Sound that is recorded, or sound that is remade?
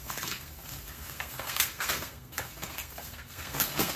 remade